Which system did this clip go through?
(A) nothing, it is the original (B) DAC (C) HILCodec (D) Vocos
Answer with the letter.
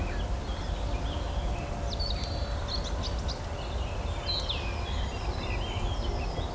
A